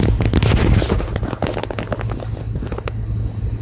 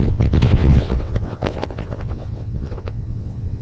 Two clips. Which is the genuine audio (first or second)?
first